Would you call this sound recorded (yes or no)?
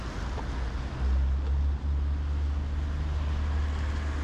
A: yes